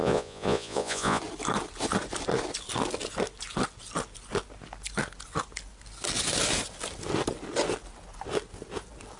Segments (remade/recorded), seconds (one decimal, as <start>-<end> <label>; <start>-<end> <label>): 0.0-1.2 remade; 1.2-9.2 recorded